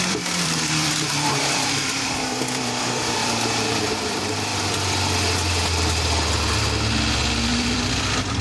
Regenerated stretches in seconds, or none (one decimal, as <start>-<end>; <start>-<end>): 0.0-4.5; 7.5-8.4